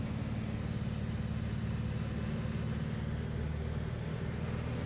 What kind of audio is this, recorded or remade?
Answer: recorded